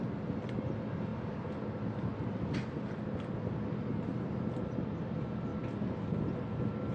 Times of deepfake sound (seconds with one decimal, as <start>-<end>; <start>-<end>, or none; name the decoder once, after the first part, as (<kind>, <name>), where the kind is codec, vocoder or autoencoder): none